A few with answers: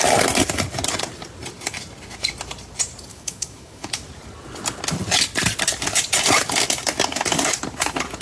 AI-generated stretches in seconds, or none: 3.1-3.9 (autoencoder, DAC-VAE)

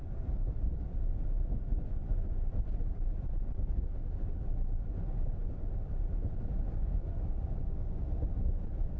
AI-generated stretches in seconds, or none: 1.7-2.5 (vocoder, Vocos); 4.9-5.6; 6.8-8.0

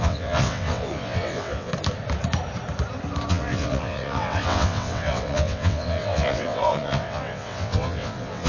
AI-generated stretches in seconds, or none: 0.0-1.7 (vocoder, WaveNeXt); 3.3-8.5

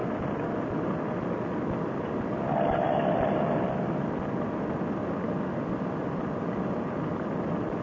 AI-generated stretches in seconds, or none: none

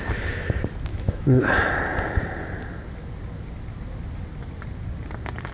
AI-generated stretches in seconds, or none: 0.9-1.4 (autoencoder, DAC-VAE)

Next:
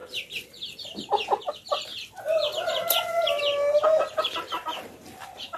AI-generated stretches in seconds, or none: none

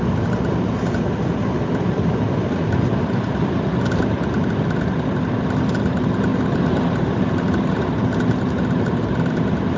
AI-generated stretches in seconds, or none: none